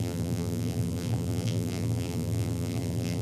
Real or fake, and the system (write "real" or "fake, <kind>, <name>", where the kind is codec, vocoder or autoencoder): fake, vocoder, BigVGAN v2